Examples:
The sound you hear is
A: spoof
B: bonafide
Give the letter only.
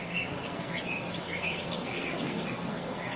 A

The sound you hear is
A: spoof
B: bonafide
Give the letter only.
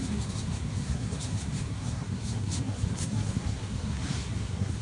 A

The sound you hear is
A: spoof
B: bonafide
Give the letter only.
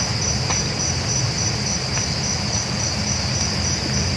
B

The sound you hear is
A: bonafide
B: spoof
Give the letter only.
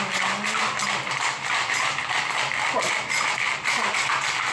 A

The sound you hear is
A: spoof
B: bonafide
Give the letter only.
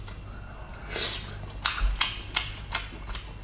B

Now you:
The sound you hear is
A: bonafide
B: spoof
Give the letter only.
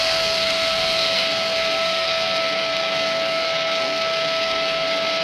B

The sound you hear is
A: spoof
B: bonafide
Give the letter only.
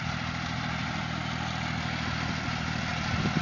B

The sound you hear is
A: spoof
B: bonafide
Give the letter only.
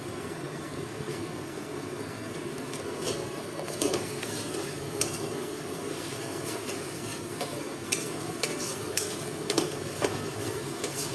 A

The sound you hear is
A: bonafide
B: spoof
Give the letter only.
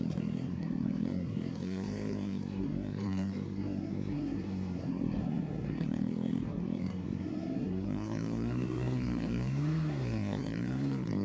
B